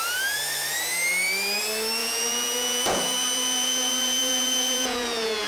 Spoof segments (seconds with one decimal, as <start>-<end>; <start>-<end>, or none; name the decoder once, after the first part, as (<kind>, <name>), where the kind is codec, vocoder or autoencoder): 2.0-5.5 (vocoder, Vocos)